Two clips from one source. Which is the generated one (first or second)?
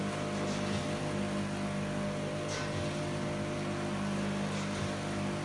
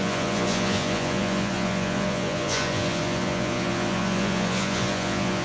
second